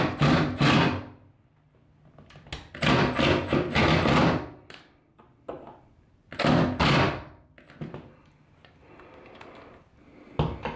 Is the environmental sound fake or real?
real